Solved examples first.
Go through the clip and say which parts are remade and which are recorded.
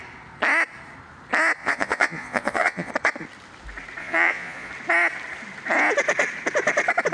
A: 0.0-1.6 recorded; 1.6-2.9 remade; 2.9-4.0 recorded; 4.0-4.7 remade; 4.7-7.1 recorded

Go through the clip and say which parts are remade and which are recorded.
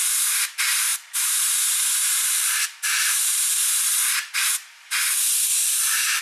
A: 0.0-6.2 remade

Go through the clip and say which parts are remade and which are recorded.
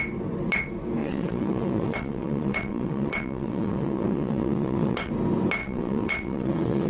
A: 0.0-1.0 recorded; 1.0-5.1 remade; 5.1-5.6 recorded; 5.6-6.9 remade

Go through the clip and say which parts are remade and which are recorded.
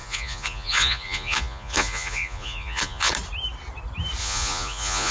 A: 0.0-3.1 remade; 3.1-4.2 recorded; 4.2-5.1 remade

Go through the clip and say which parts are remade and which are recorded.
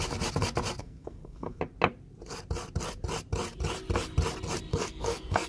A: 0.0-0.8 recorded; 0.8-1.6 remade; 1.6-4.7 recorded; 4.7-5.5 remade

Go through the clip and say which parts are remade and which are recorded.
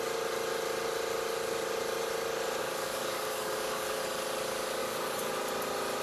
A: 0.0-2.6 recorded; 2.6-4.0 remade; 4.0-4.8 recorded; 4.8-5.3 remade; 5.3-6.0 recorded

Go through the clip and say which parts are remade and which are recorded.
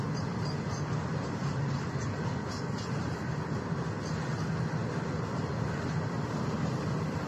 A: 0.0-7.3 recorded